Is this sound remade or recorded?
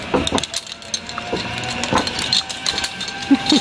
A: recorded